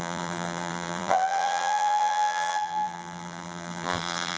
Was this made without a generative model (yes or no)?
no